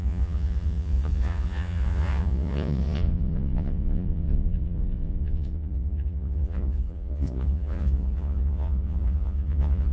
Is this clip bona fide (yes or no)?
no